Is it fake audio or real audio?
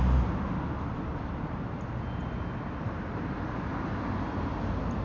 real